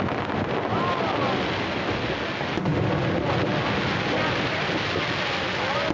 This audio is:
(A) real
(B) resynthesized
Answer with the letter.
A